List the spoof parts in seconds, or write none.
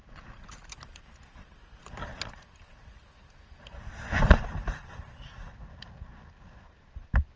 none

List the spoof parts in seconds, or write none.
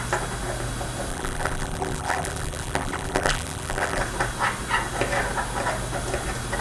1.1-4.0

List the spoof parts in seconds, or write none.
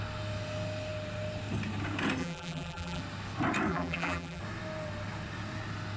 2.2-3.0; 3.7-4.4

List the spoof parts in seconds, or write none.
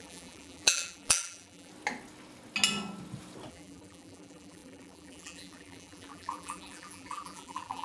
0.0-1.7; 3.5-7.8